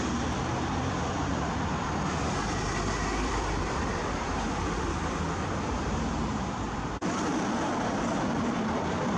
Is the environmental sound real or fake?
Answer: fake